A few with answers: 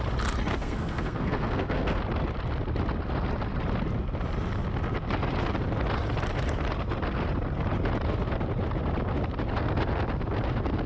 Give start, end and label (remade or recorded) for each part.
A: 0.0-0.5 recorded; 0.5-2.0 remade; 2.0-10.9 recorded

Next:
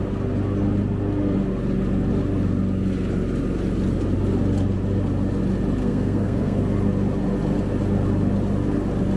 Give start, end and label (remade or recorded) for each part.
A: 0.0-5.8 recorded; 5.8-6.6 remade; 6.6-9.2 recorded

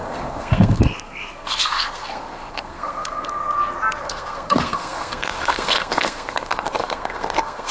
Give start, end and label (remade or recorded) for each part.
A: 0.0-3.4 remade; 3.4-4.0 recorded; 4.0-7.7 remade